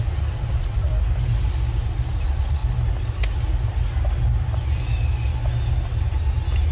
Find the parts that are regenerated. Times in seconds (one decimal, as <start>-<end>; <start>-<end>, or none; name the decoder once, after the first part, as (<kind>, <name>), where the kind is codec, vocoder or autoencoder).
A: 0.0-0.9 (vocoder, Vocos); 2.2-2.6